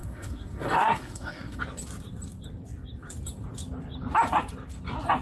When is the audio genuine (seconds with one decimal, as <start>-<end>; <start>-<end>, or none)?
1.6-5.2